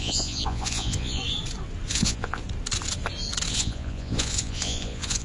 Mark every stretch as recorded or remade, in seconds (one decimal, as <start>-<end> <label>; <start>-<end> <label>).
0.0-1.2 remade; 1.2-1.9 recorded; 1.9-2.4 remade; 2.4-3.5 recorded; 3.5-5.2 remade